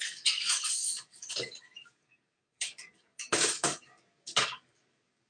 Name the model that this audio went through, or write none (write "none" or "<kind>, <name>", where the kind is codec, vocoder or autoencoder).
codec, DAC